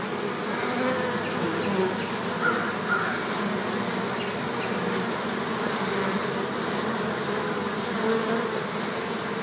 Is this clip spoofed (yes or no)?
no